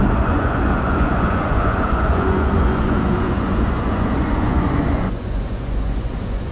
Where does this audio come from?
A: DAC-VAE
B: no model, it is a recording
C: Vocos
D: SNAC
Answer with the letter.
C